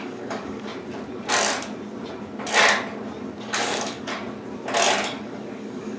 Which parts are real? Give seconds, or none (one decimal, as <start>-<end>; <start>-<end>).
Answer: 0.7-3.4; 4.1-5.2